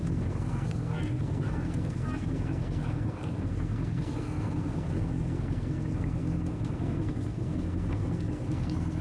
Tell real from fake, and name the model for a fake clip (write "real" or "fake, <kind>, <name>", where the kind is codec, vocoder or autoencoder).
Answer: fake, codec, SNAC